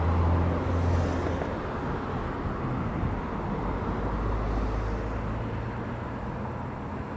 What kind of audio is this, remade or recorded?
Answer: recorded